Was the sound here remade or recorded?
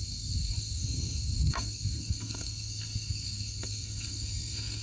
remade